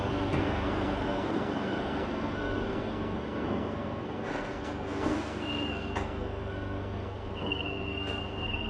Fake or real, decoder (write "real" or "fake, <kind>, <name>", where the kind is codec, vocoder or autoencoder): fake, codec, SNAC